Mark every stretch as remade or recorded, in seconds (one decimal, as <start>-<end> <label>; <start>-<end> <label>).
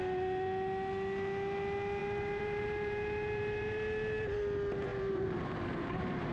0.0-2.0 recorded; 2.0-4.4 remade; 4.4-4.9 recorded; 4.9-6.3 remade